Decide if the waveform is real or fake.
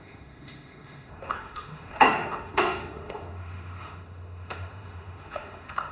fake